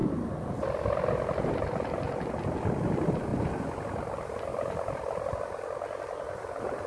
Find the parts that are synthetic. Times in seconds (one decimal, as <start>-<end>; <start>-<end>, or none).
3.3-5.4